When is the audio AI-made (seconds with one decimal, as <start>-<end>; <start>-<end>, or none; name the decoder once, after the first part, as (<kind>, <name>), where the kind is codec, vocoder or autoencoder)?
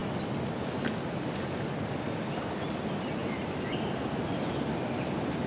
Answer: none